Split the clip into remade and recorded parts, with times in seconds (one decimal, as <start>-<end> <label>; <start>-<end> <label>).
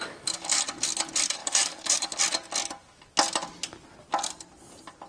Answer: 0.0-0.6 remade; 0.6-1.4 recorded; 1.4-2.2 remade; 2.2-5.1 recorded